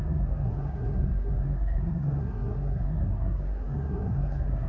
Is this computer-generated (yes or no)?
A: yes